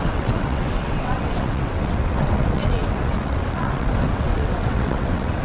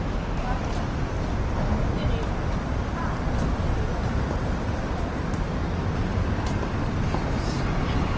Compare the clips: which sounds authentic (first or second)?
second